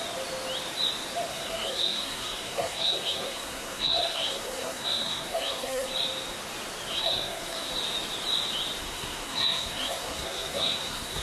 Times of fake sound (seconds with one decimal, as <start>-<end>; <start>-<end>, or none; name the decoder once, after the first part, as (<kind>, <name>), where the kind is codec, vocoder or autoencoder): 1.3-5.9 (codec, SNAC); 6.9-7.7; 8.8-11.2